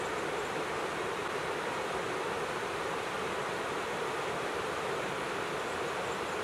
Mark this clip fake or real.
fake